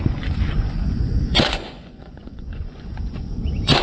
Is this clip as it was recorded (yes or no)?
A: no